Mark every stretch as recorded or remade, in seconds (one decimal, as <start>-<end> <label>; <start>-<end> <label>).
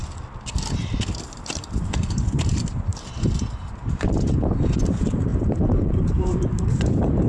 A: 0.0-0.7 recorded; 0.7-7.3 remade